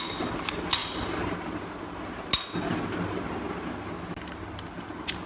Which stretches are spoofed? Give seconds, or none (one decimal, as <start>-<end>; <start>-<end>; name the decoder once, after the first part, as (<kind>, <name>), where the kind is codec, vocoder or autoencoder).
none